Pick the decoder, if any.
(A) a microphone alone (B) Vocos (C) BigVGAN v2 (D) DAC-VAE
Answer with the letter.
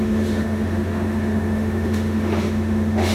D